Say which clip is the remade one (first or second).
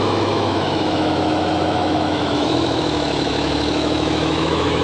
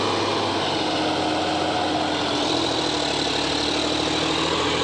first